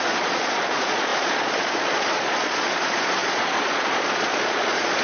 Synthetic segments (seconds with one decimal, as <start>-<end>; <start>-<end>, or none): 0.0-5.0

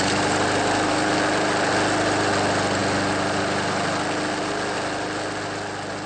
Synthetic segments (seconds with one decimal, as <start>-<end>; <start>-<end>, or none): none

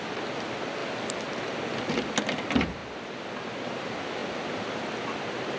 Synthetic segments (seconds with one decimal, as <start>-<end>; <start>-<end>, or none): none

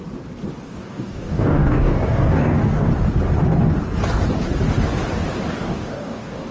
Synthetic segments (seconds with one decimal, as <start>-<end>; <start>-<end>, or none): 0.6-2.9; 5.5-6.5

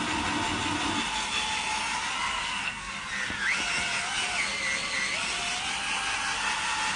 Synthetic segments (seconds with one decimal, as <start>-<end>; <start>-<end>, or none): 2.4-2.9

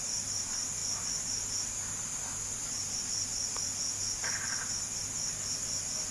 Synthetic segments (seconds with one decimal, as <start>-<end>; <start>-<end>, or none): none

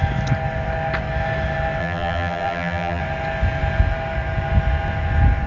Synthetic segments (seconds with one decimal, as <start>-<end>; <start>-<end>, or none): 1.8-3.0

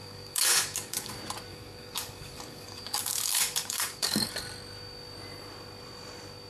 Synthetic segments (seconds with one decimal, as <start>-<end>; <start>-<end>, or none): 0.0-1.1; 1.5-4.3